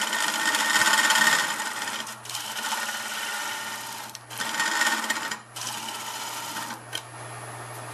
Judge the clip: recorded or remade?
recorded